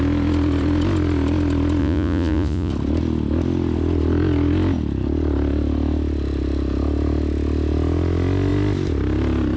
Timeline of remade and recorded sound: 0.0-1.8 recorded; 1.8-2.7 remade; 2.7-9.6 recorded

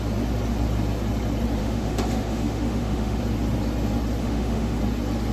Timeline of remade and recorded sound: 0.0-1.6 recorded; 1.6-3.2 remade; 3.2-4.2 recorded; 4.2-4.8 remade; 4.8-5.3 recorded

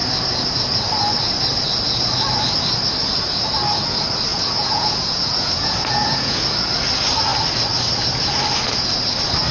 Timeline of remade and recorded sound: 0.0-4.3 recorded; 4.3-6.4 remade; 6.4-9.5 recorded

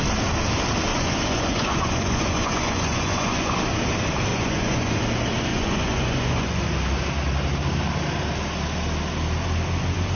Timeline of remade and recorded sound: 0.0-0.9 recorded; 0.9-3.6 remade; 3.6-4.3 recorded; 4.3-4.9 remade; 4.9-5.5 recorded; 5.5-6.7 remade; 6.7-10.2 recorded

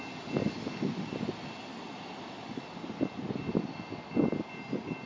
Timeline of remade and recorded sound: 0.0-5.1 recorded

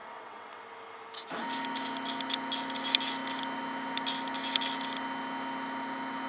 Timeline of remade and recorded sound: 0.0-0.6 remade; 0.6-6.3 recorded

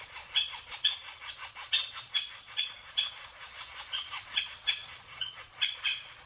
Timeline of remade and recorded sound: 0.0-6.3 remade

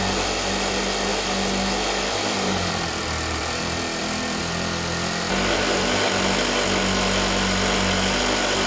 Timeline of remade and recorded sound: 0.0-1.1 recorded; 1.1-4.4 remade; 4.4-8.7 recorded